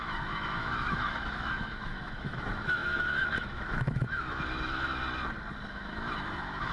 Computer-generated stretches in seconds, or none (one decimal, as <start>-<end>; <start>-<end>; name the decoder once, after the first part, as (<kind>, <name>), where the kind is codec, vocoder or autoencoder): 0.0-5.0 (autoencoder, DAC-VAE); 5.7-6.7